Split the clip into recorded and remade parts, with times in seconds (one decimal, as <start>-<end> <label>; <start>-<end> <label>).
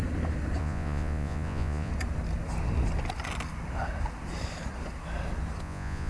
0.0-0.6 recorded; 0.6-1.9 remade; 1.9-5.6 recorded; 5.6-6.1 remade